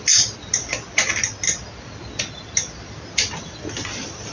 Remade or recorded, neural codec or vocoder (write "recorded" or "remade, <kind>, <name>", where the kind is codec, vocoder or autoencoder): recorded